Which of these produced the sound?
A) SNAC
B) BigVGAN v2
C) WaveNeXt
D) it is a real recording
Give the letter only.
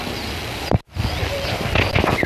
D